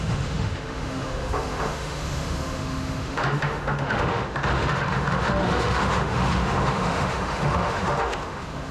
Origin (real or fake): fake